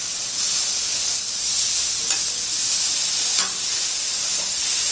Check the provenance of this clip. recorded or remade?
recorded